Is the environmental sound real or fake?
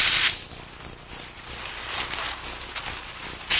real